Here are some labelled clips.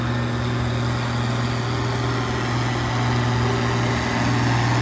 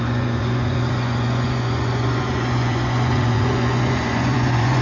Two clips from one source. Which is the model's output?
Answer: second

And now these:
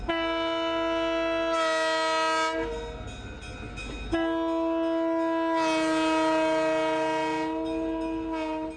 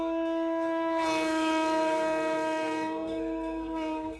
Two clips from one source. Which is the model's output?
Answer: second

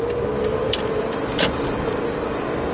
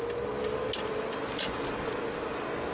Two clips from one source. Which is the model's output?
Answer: first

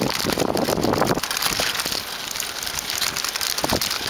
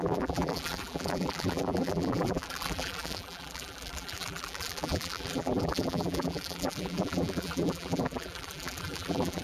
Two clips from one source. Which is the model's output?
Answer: second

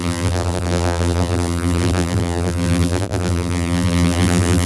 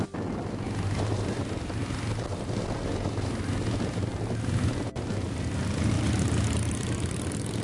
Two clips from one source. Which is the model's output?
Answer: first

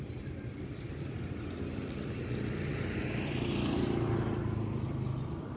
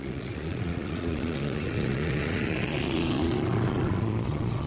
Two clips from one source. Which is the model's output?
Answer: second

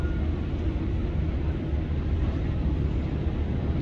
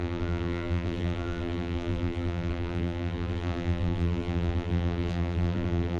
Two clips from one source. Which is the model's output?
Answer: second